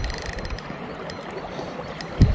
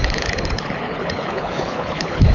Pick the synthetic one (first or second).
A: second